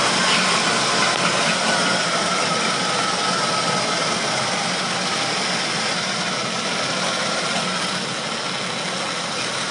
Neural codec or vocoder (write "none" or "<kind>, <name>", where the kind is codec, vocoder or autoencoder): none